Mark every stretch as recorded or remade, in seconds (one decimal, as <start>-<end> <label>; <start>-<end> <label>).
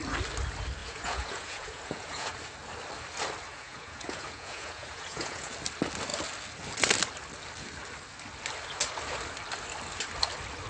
0.0-0.8 recorded; 0.8-2.3 remade; 2.3-3.5 recorded; 3.5-5.5 remade; 5.5-10.7 recorded